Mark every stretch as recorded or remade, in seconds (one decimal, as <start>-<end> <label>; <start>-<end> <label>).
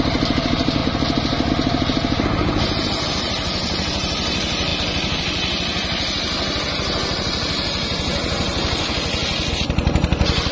0.0-10.5 recorded